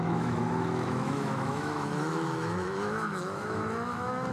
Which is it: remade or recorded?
remade